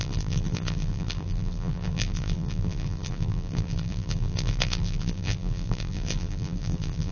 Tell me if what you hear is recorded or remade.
remade